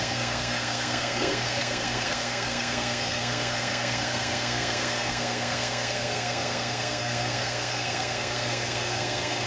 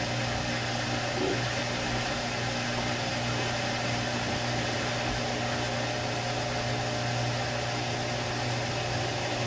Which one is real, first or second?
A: second